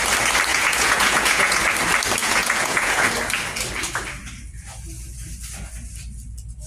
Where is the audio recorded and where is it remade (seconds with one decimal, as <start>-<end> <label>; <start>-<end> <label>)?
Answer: 0.0-0.5 recorded; 0.5-1.6 remade; 1.6-2.2 recorded; 2.2-3.1 remade; 3.1-6.7 recorded